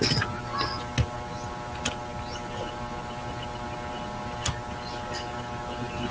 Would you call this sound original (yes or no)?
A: yes